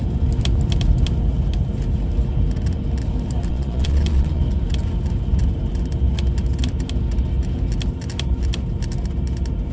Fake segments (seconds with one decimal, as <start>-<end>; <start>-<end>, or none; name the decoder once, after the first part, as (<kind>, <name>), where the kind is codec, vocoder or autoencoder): 3.5-4.4 (vocoder, Vocos)